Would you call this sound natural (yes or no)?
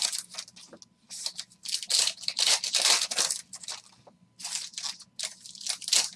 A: yes